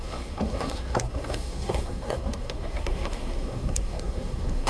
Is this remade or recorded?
remade